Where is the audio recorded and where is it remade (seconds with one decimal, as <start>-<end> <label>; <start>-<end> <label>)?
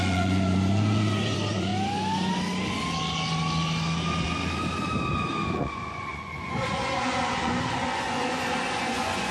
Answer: 0.0-1.7 remade; 1.7-5.5 recorded; 5.5-9.3 remade